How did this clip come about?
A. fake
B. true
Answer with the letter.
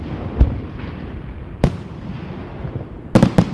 B